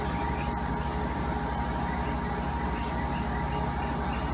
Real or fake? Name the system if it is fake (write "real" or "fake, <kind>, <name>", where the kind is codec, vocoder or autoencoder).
real